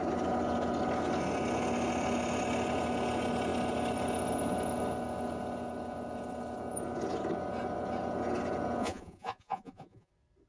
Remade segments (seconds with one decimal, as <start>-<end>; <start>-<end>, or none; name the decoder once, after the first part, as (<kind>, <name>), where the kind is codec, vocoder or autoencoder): 8.8-10.1 (vocoder, Vocos)